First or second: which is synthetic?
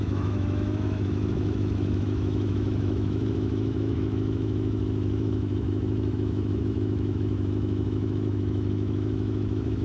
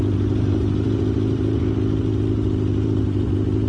first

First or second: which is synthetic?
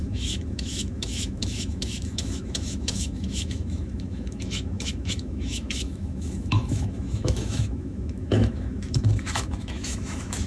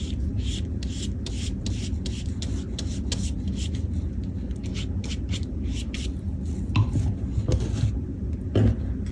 first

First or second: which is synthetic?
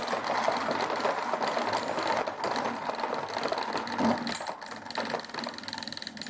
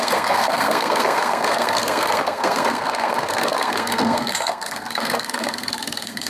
second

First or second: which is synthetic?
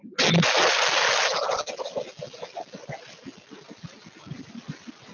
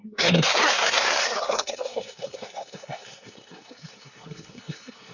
second